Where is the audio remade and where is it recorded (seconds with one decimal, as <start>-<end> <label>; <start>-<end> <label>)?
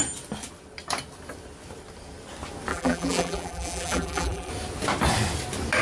0.0-2.7 recorded; 2.7-4.5 remade; 4.5-5.8 recorded